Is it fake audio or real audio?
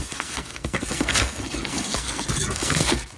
fake